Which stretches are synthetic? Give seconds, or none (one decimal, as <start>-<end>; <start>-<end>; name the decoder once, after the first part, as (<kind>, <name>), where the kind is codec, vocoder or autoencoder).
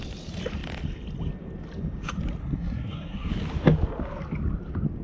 2.4-3.3 (codec, SNAC)